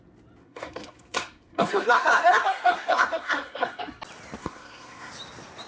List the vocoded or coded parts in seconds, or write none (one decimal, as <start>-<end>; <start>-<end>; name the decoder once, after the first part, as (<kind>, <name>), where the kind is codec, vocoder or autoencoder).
0.4-3.8 (codec, SNAC); 4.4-5.1

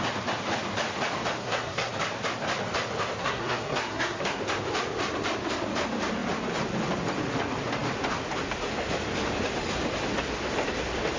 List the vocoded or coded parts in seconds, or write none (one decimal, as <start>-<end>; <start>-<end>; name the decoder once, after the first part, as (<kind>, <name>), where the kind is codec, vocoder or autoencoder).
1.4-1.9 (codec, SNAC); 3.2-4.4

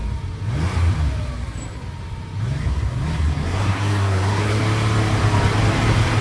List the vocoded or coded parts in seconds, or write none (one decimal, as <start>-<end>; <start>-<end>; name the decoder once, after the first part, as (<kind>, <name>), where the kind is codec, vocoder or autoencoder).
2.6-4.6 (codec, SNAC)

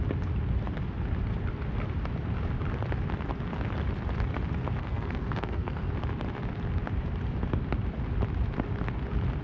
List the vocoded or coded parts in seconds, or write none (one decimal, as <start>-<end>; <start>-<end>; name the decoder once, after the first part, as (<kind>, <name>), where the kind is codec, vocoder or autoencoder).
4.8-5.9 (codec, SNAC)